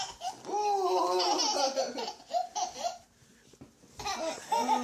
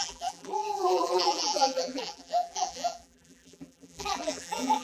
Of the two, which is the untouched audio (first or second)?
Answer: first